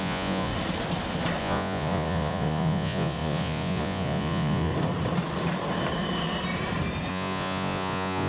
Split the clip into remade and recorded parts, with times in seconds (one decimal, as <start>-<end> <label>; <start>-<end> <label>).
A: 0.0-0.5 remade; 0.5-1.4 recorded; 1.4-4.7 remade; 4.7-7.1 recorded; 7.1-8.3 remade